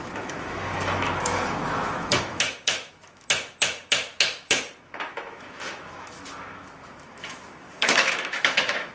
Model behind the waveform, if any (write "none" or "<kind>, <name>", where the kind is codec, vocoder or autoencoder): autoencoder, DAC-VAE